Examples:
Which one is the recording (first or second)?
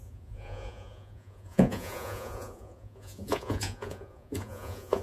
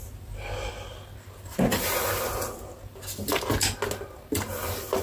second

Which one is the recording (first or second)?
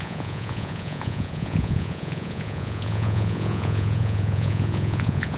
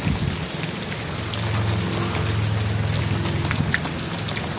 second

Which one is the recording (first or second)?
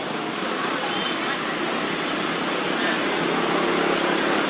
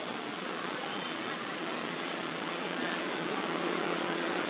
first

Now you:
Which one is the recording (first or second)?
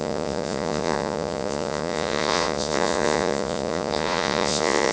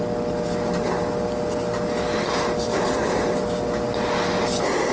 second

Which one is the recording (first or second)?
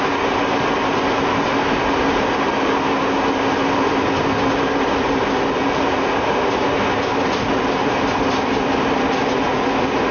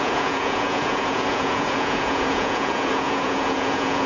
first